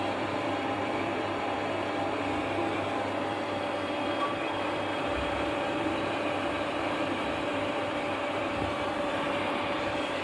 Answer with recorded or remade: remade